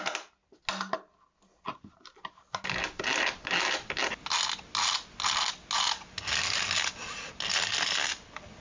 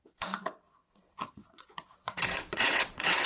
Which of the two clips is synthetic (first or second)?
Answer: second